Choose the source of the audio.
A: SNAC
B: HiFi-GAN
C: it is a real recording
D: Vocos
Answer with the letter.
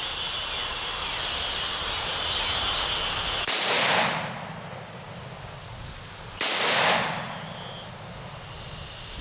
C